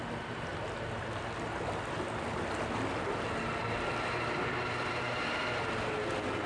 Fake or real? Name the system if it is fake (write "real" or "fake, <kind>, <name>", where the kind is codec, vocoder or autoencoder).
real